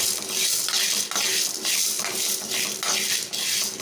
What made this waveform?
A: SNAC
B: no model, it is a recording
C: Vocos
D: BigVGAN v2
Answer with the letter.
B